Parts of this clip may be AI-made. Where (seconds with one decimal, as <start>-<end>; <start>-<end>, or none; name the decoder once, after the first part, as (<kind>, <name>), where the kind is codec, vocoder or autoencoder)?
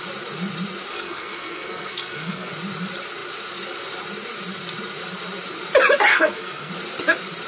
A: 0.9-2.5 (codec, SNAC); 6.1-6.7